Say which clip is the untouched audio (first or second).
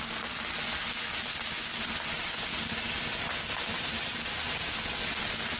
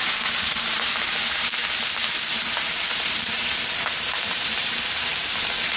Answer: first